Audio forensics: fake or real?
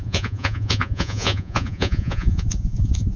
fake